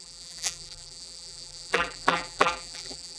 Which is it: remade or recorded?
remade